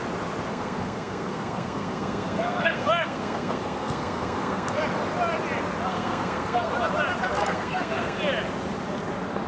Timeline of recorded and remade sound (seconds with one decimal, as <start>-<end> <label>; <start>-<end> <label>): 0.0-0.5 recorded; 0.5-4.8 remade; 4.8-5.9 recorded; 5.9-6.7 remade; 6.7-7.4 recorded; 7.4-8.2 remade; 8.2-9.5 recorded